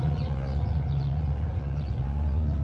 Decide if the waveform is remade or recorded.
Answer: remade